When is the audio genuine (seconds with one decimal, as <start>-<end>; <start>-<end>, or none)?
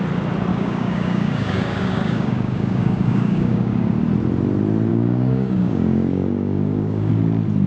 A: 0.0-0.5; 3.9-4.9; 7.1-7.7